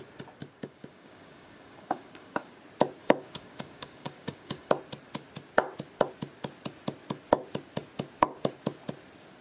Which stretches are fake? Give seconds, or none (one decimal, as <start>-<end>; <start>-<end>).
0.4-2.6; 3.0-4.7